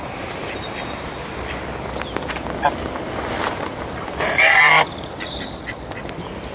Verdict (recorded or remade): recorded